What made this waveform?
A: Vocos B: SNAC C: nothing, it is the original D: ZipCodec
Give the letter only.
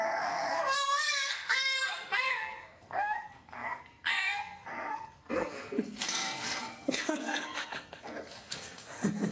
B